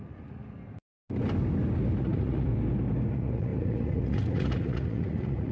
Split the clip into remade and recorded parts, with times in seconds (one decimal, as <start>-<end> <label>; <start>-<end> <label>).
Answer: 0.0-0.4 remade; 0.4-2.0 recorded; 2.0-2.5 remade; 2.5-3.1 recorded; 3.1-5.5 remade